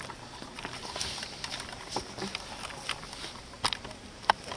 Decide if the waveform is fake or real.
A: real